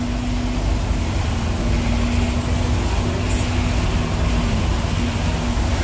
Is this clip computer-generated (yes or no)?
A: no